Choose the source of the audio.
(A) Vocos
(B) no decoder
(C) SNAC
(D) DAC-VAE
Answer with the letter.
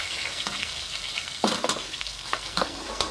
C